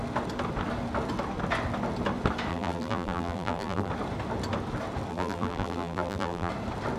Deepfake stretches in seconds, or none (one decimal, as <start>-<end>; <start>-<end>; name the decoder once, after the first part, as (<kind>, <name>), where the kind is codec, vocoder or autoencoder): 2.5-3.9 (vocoder, BigVGAN v2); 5.1-6.5